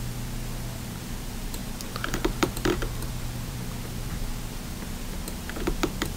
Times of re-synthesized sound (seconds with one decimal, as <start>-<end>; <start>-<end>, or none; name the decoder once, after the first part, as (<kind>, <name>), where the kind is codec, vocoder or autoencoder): 1.6-4.5 (vocoder, BigVGAN v2)